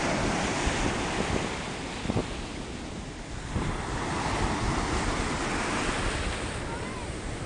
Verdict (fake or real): real